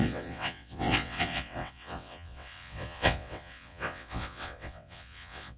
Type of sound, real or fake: fake